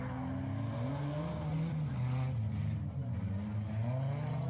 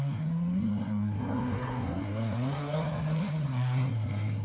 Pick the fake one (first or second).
second